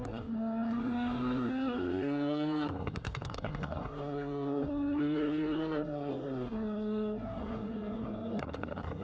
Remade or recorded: remade